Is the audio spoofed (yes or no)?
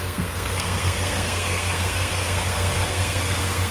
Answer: yes